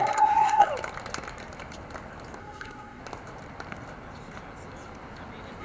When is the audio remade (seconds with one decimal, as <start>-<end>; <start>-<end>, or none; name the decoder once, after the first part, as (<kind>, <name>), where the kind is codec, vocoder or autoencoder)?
0.0-0.7 (codec, SNAC); 2.4-3.0